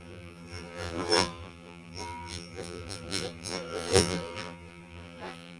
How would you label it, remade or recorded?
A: remade